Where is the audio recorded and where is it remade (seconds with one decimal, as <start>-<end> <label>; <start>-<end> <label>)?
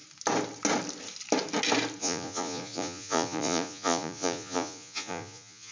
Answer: 0.0-2.0 recorded; 2.0-5.7 remade